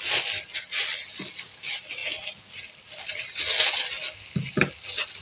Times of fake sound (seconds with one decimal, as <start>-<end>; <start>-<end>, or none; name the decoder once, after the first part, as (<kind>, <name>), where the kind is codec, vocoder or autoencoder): none